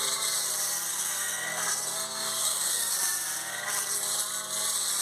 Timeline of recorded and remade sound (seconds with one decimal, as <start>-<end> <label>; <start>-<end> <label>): 0.0-0.9 recorded; 0.9-2.9 remade; 2.9-5.0 recorded